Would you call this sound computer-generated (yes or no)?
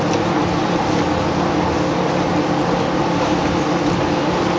no